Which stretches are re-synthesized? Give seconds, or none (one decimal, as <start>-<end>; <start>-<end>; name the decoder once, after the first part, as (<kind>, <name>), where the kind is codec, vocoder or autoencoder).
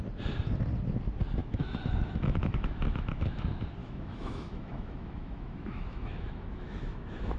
1.4-3.4 (autoencoder, DAC-VAE); 3.8-7.4